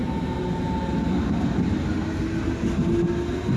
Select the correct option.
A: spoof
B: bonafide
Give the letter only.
B